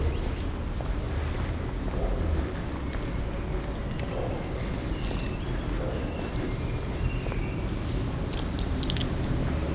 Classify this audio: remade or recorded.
recorded